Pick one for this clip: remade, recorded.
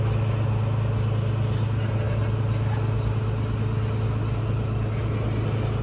recorded